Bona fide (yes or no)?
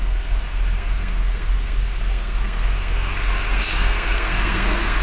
no